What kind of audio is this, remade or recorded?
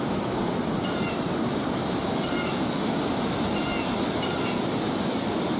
recorded